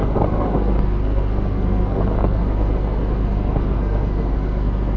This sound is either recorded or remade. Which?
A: remade